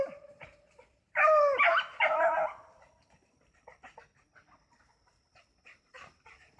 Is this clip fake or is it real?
real